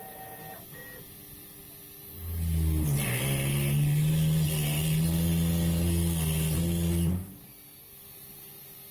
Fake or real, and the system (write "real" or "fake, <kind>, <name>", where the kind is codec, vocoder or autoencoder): real